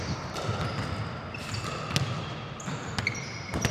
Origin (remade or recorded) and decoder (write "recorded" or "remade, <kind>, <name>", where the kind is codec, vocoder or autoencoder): recorded